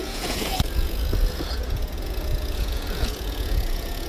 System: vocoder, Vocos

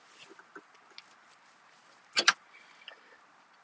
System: none